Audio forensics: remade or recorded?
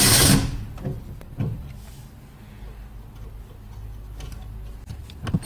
recorded